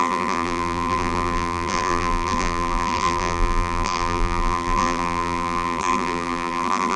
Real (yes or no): no